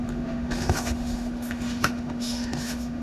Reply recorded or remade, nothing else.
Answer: remade